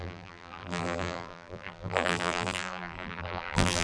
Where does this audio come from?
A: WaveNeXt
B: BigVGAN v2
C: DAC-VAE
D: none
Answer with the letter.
B